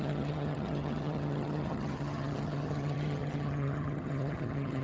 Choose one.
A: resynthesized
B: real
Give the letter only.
A